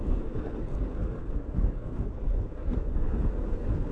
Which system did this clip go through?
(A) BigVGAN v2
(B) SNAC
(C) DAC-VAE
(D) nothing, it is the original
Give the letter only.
B